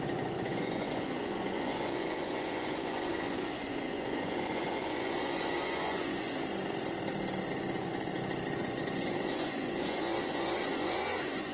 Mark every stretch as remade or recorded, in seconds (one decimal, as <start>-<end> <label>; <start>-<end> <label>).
0.0-6.4 remade; 6.4-7.5 recorded; 7.5-8.1 remade; 8.1-8.6 recorded; 8.6-11.5 remade